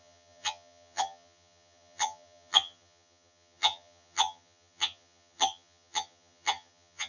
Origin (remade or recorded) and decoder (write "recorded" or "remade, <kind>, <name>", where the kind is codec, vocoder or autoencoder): remade, vocoder, HiFi-GAN